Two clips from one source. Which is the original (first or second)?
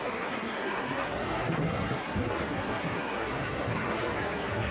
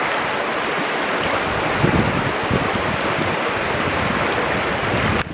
second